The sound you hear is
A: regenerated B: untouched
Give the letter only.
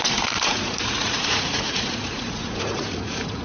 A